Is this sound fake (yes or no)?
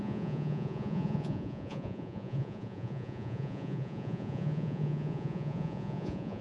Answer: yes